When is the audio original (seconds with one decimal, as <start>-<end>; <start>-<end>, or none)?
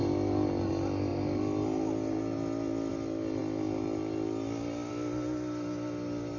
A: 0.0-6.4